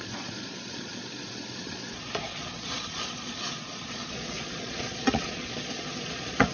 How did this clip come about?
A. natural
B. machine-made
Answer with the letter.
B